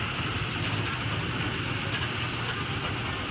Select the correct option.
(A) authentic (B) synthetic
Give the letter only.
A